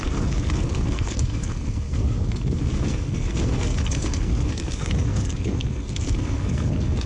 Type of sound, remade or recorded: remade